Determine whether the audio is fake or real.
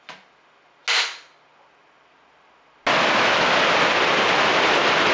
real